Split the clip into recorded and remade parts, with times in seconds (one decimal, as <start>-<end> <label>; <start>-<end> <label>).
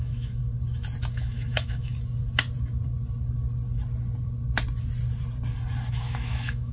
0.0-0.4 remade; 0.4-1.1 recorded; 1.1-1.9 remade; 1.9-5.9 recorded; 5.9-6.7 remade